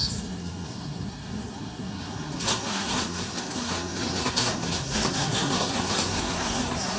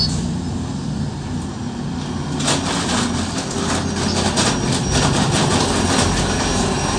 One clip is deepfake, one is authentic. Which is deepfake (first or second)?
first